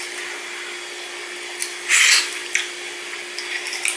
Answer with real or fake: real